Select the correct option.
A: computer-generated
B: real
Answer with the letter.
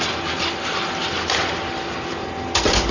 B